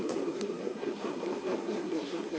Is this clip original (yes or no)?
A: no